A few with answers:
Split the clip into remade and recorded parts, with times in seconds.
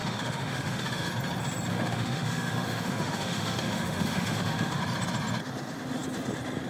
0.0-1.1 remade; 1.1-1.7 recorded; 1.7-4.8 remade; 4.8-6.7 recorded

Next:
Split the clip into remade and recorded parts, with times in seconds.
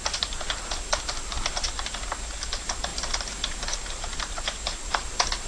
0.0-5.5 remade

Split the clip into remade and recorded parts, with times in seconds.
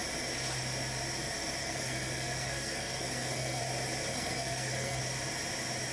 0.0-1.6 recorded; 1.6-3.6 remade; 3.6-4.1 recorded; 4.1-5.0 remade; 5.0-5.9 recorded